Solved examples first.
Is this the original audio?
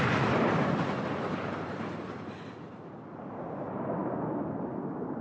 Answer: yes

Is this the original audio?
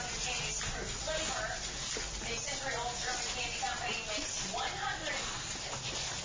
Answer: yes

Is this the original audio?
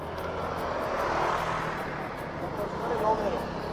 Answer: yes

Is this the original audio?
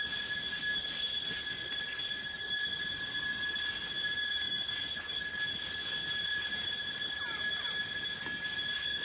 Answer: yes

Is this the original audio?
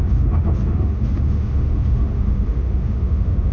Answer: no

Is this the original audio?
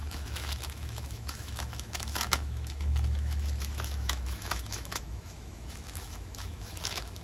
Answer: no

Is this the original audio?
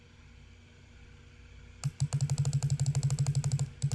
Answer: yes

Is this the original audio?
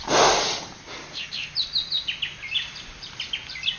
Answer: yes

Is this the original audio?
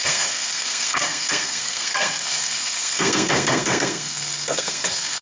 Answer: no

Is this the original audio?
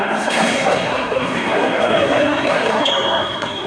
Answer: no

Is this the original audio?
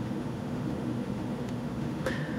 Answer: no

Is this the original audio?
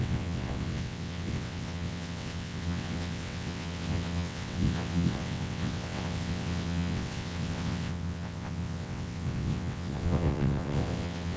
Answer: no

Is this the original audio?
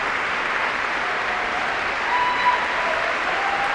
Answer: yes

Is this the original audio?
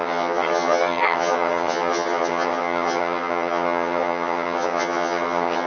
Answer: no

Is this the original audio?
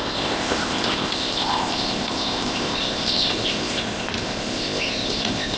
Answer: no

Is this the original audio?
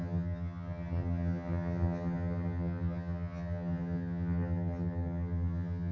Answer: no